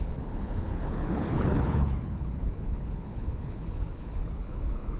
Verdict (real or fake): fake